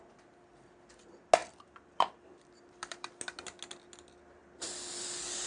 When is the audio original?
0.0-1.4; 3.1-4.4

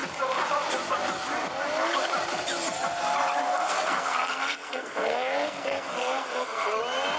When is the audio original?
0.0-3.5; 6.8-7.2

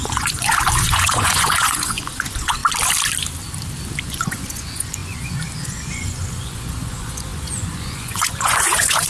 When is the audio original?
2.6-4.0

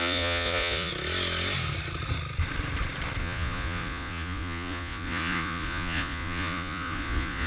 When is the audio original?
0.9-3.2

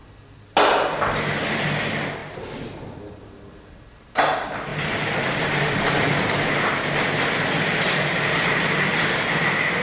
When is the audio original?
0.0-4.7; 6.3-9.8